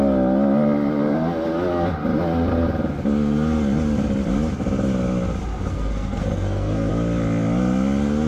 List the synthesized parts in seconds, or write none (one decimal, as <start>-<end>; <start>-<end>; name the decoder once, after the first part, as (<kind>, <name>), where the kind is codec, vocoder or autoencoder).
5.7-6.9 (codec, SNAC)

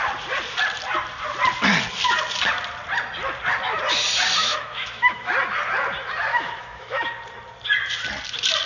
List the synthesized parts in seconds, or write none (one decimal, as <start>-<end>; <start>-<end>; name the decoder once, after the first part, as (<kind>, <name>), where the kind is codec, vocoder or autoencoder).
4.4-5.3 (autoencoder, DAC-VAE); 6.3-7.1

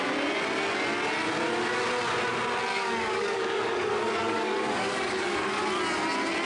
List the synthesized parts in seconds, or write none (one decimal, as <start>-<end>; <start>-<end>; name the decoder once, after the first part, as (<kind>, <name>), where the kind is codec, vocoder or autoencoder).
2.7-5.6 (codec, DAC)

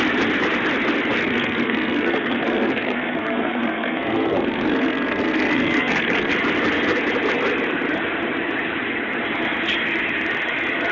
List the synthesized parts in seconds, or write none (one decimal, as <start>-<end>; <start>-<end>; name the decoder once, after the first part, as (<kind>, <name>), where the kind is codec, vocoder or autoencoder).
1.2-6.3 (codec, SNAC)